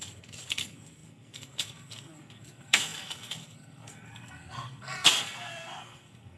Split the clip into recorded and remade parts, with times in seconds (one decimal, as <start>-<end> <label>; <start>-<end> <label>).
0.0-6.4 remade